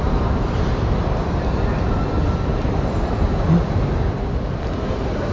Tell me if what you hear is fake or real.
real